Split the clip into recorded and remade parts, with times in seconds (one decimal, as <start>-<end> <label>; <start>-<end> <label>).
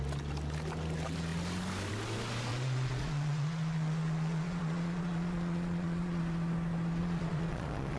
0.0-2.5 recorded; 2.5-6.2 remade; 6.2-7.0 recorded; 7.0-8.0 remade